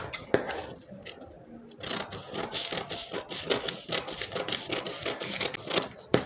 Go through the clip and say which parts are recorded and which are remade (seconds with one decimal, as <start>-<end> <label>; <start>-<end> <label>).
0.0-6.3 recorded